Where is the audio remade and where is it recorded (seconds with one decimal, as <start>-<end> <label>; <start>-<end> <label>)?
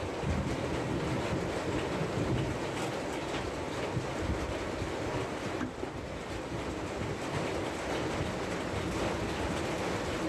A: 0.0-10.3 recorded